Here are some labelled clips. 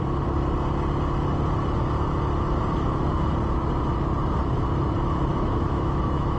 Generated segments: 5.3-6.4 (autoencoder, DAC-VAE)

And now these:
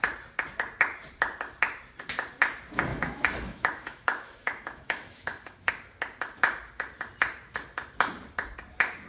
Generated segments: 2.9-5.7 (autoencoder, DAC-VAE)

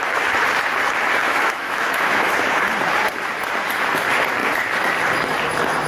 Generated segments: 1.2-2.3 (autoencoder, DAC-VAE)

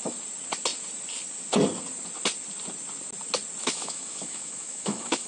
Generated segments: 3.6-5.3 (autoencoder, DAC-VAE)

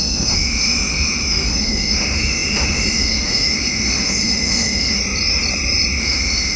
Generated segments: 0.0-5.0 (autoencoder, DAC-VAE); 6.0-6.6

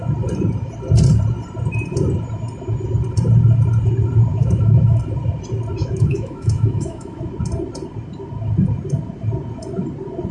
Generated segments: 4.3-5.0 (autoencoder, DAC-VAE); 5.8-7.2

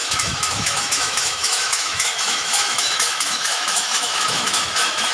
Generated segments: 0.0-5.1 (autoencoder, DAC-VAE)

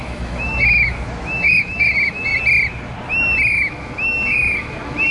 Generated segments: 0.0-2.3 (autoencoder, DAC-VAE); 3.5-5.1